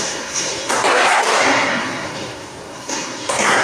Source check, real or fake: fake